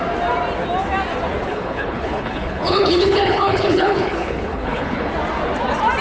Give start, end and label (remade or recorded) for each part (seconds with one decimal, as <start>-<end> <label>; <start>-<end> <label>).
0.0-1.5 recorded; 1.5-5.1 remade; 5.1-6.0 recorded